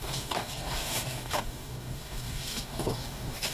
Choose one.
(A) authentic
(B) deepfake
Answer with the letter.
B